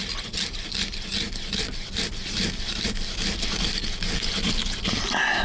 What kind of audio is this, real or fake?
real